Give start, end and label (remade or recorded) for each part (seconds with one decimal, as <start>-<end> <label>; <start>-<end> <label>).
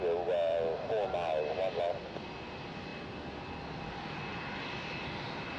0.0-5.6 recorded